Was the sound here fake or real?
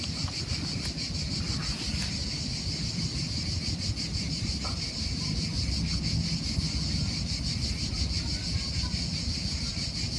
real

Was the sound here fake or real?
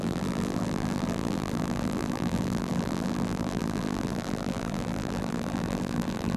fake